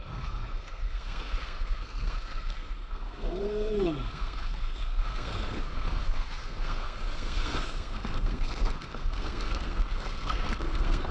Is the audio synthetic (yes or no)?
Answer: yes